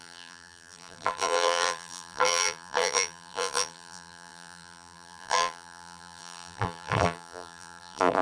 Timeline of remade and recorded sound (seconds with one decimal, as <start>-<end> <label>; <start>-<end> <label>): 0.0-8.2 remade